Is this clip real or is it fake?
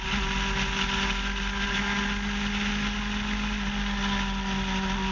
real